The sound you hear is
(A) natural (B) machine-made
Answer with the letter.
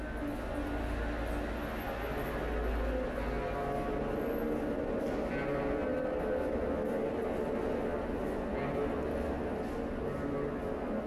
A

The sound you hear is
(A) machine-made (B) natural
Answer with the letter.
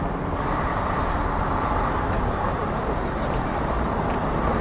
B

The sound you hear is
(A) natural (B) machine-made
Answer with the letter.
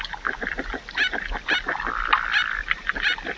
A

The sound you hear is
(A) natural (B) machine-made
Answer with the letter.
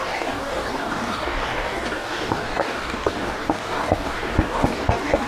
B